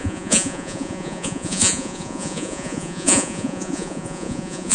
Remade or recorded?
remade